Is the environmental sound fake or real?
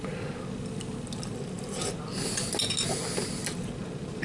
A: real